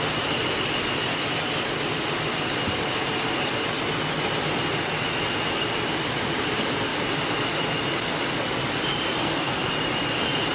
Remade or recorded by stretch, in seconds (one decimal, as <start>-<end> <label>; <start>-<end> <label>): 0.0-9.2 recorded; 9.2-9.7 remade; 9.7-10.5 recorded